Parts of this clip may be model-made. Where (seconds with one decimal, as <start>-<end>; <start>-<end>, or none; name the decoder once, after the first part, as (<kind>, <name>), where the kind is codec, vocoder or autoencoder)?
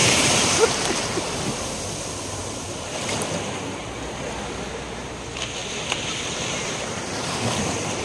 0.0-0.6 (vocoder, BigVGAN v2); 2.4-3.3; 5.6-8.0